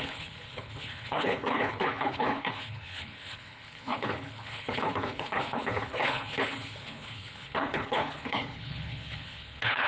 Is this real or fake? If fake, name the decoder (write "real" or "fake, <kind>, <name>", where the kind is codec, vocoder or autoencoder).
fake, codec, HILCodec